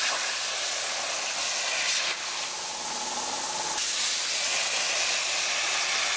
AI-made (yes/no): no